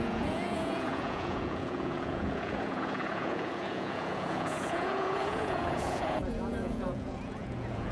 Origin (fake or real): fake